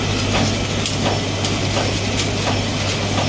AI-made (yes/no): no